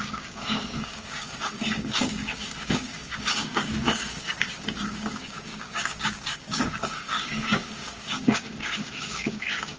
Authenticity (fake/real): fake